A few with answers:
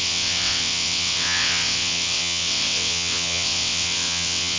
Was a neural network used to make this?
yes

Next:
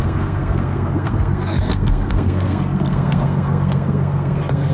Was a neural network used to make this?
yes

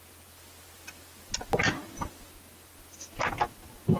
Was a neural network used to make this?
no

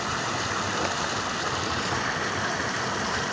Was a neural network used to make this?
yes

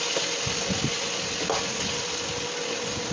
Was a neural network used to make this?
no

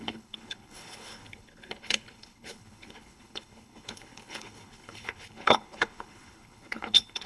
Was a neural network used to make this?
yes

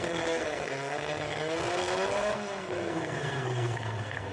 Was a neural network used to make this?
yes